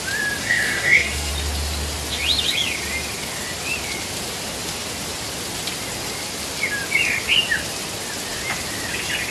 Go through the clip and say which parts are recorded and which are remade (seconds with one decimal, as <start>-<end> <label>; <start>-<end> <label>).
0.0-0.4 recorded; 0.4-1.3 remade; 1.3-9.3 recorded